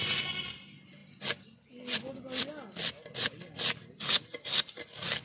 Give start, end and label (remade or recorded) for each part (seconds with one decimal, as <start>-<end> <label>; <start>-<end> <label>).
0.0-5.2 recorded